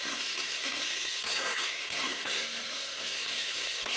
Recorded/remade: remade